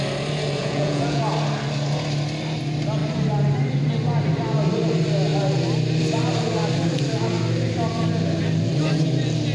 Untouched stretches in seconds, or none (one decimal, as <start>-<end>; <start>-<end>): 0.0-0.6; 1.2-9.5